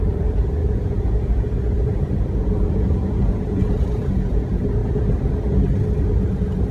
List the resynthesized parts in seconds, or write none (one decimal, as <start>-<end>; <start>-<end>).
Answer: 0.0-4.8; 6.1-6.7